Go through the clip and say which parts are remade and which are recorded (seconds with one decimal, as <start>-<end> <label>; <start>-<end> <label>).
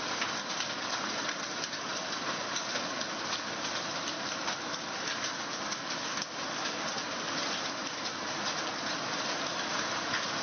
0.0-10.4 recorded